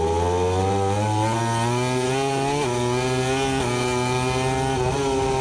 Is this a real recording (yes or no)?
yes